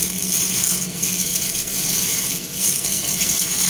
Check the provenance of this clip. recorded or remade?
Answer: remade